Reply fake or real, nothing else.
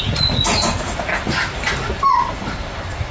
real